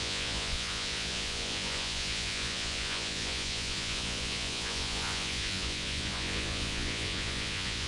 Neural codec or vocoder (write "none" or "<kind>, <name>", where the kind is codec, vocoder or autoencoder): vocoder, Vocos